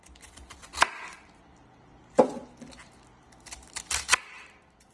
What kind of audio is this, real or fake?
real